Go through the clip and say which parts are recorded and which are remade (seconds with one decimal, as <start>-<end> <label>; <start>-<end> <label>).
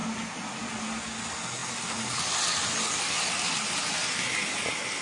0.0-5.0 recorded